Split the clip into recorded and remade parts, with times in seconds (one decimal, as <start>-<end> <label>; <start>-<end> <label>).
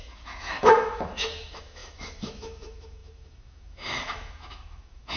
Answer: 0.0-5.2 remade